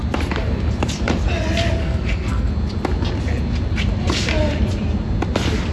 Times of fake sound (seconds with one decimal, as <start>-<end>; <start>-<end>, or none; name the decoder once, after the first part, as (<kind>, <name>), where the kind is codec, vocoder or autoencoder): 1.8-2.5 (codec, SNAC)